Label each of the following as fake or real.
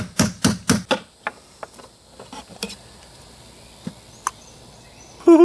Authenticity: real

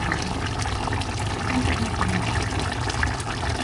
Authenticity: real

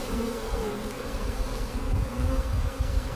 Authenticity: fake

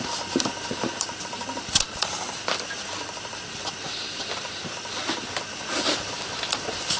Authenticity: real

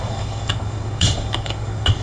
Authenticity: fake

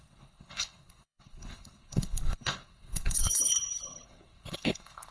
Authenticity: fake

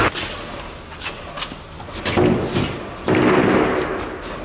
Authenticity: real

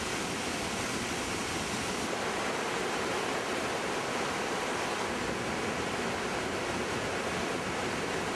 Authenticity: real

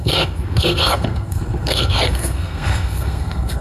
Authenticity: fake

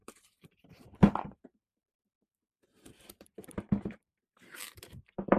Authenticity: fake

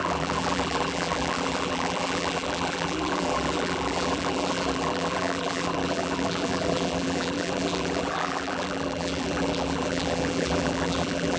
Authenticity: fake